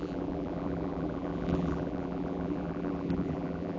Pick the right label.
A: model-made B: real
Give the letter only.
A